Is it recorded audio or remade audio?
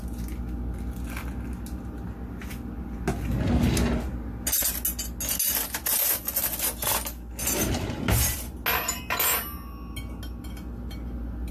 recorded